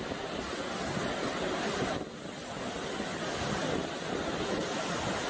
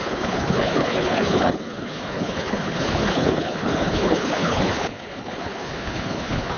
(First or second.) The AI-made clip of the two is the second